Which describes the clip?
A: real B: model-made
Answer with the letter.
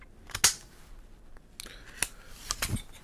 A